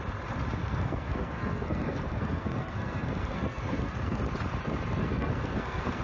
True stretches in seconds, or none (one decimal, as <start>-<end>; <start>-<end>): 0.0-0.6; 4.2-5.0